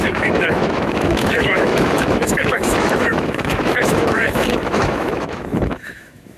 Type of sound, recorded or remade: remade